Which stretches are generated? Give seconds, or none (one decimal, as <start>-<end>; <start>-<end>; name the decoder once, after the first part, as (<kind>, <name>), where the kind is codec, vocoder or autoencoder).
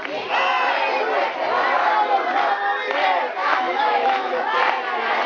3.4-4.4 (autoencoder, DAC-VAE)